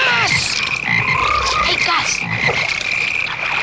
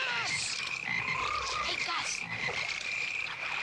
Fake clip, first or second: second